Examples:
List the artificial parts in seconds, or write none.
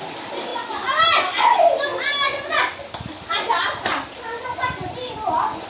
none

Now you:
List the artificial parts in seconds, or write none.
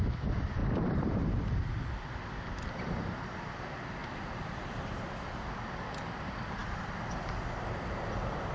0.6-2.1 (vocoder, BigVGAN v2); 4.0-5.8; 6.6-7.2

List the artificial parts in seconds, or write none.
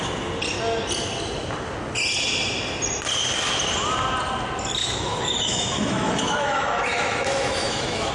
4.8-8.1 (autoencoder, DAC-VAE)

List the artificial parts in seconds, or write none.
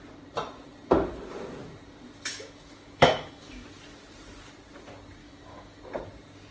2.3-3.7 (autoencoder, DAC-VAE); 5.2-5.8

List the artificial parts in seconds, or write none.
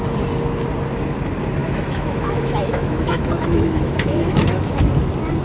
1.6-4.8 (autoencoder, DAC-VAE)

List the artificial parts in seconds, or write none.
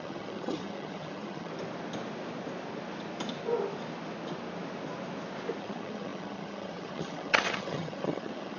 0.0-1.5 (vocoder, HiFi-GAN); 5.6-8.6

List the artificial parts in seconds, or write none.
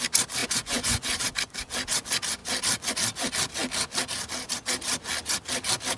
0.4-1.2 (vocoder, Vocos)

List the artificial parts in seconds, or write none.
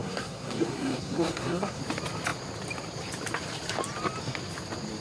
0.0-1.8 (codec, SNAC)